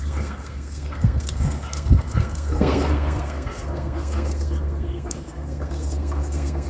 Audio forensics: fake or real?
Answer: fake